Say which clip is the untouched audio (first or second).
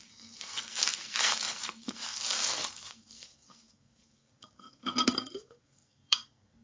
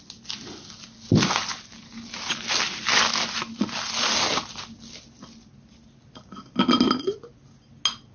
second